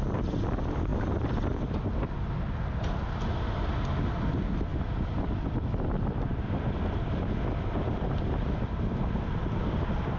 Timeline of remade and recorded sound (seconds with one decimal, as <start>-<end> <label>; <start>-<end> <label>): 0.0-10.2 recorded